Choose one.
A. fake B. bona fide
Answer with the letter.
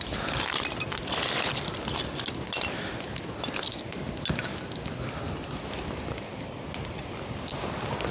B